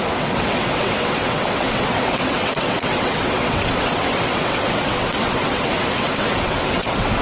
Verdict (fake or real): fake